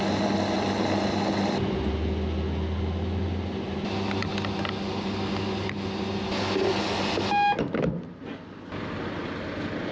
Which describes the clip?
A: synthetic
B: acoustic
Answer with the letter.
B